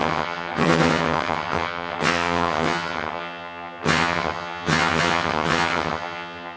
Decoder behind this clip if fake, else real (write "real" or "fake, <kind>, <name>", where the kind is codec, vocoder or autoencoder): fake, vocoder, HiFi-GAN